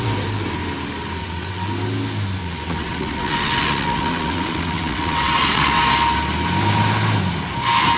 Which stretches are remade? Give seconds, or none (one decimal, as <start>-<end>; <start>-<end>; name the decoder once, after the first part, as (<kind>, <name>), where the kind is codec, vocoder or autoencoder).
1.2-1.7 (vocoder, WaveNeXt); 2.4-5.8